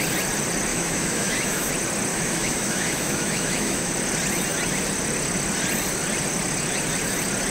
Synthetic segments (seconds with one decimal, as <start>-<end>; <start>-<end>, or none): 0.7-1.7; 2.1-3.9